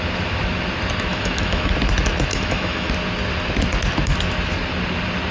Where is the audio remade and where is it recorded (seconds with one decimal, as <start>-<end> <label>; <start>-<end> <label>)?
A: 0.0-1.1 recorded; 1.1-1.7 remade; 1.7-2.3 recorded; 2.3-2.9 remade; 2.9-5.3 recorded